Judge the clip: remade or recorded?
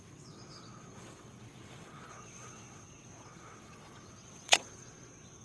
remade